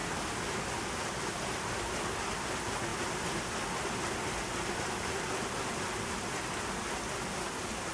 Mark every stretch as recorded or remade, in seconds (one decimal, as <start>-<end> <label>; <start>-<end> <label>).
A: 0.0-7.9 recorded